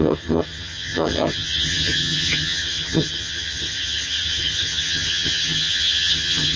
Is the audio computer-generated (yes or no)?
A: yes